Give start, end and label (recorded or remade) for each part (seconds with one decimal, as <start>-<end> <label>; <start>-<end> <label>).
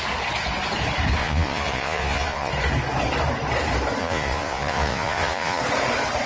0.0-1.2 recorded; 1.2-2.5 remade; 2.5-4.0 recorded; 4.0-5.6 remade; 5.6-6.3 recorded